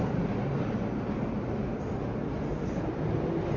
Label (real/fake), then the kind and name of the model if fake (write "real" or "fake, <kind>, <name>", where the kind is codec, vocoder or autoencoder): real